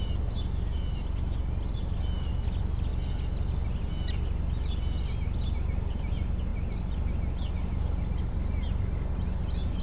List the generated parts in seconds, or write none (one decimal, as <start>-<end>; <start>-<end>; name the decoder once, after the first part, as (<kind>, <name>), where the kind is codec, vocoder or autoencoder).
none